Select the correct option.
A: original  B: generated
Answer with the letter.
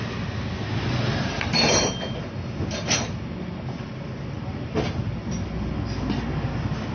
A